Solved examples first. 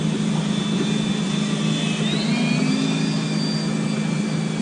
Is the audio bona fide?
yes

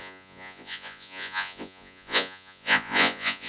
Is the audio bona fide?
no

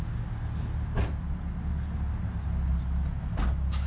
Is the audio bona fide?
yes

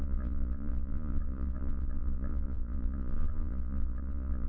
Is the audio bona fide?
no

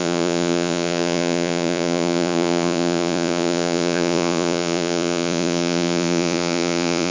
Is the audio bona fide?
no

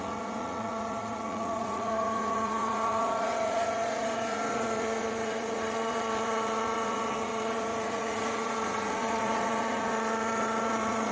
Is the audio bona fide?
no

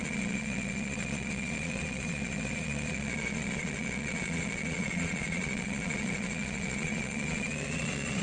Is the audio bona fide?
no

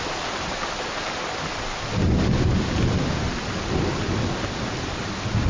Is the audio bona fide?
yes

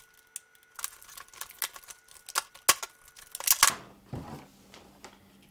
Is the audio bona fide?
yes